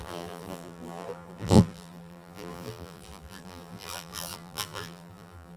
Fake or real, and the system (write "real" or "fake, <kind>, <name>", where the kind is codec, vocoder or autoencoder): fake, vocoder, BigVGAN v2